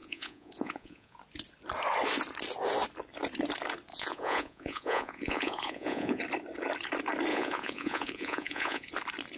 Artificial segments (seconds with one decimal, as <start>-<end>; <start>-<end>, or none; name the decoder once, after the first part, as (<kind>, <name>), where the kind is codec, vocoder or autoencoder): 0.0-1.2 (vocoder, Vocos); 3.9-6.2; 7.3-8.9

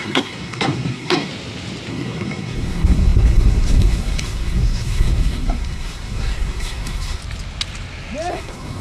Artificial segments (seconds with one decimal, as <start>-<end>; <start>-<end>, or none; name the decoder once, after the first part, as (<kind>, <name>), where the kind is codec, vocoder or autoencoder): 0.0-1.3 (codec, SNAC); 1.9-7.2; 8.3-8.8

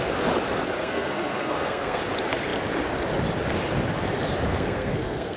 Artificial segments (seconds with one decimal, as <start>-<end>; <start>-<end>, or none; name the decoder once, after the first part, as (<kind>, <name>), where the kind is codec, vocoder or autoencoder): 0.8-2.0 (codec, SNAC); 4.5-5.4

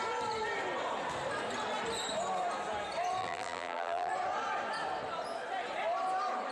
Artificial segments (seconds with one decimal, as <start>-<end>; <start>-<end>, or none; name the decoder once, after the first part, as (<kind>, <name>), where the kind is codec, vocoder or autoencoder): 3.2-4.1 (vocoder, BigVGAN v2)

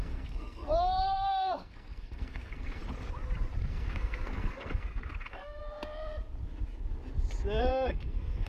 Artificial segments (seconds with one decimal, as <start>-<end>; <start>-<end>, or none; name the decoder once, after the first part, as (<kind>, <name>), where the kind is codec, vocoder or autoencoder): 0.0-2.8 (codec, SNAC); 3.6-5.6; 7.6-8.5

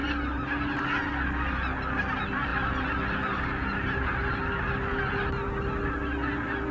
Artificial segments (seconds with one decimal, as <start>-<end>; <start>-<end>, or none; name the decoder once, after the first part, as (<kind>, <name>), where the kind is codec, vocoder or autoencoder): none